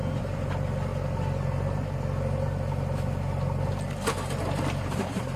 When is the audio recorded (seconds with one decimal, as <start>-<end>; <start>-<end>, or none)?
0.9-4.1